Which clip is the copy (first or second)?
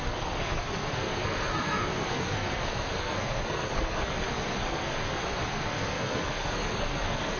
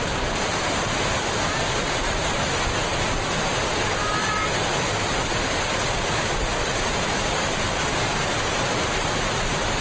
first